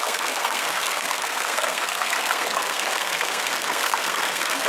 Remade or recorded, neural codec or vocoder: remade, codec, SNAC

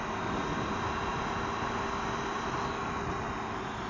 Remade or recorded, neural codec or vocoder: recorded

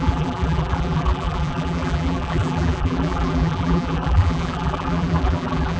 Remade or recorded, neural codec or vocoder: remade, vocoder, BigVGAN v2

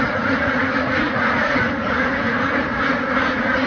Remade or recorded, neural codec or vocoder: remade, vocoder, Vocos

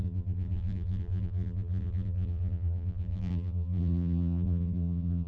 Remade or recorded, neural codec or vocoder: remade, vocoder, BigVGAN v2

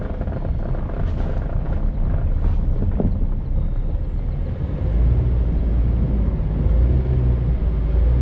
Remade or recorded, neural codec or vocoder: recorded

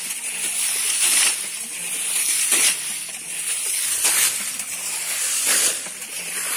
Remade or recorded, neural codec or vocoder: remade, vocoder, BigVGAN v2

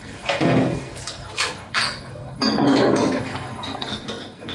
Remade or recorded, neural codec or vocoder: remade, codec, SNAC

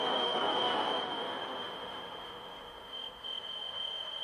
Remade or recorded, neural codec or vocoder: remade, autoencoder, DAC-VAE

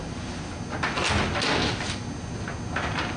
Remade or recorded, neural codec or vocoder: recorded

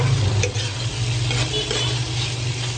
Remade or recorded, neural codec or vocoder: recorded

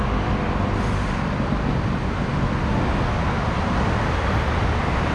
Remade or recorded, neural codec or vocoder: recorded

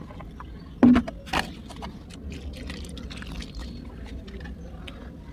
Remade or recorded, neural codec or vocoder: recorded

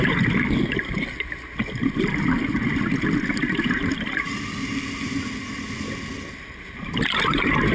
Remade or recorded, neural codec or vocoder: recorded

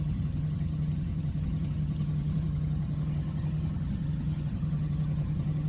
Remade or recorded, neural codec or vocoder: remade, vocoder, HiFi-GAN